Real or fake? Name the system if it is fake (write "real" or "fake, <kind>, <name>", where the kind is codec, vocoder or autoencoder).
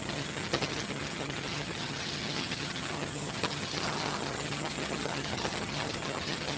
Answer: fake, vocoder, HiFi-GAN